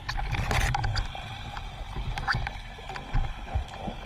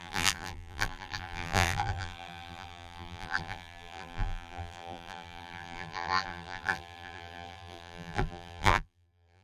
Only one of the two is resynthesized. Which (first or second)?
second